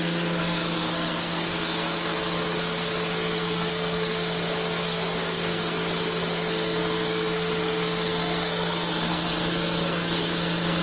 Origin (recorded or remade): remade